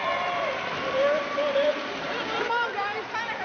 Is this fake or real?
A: fake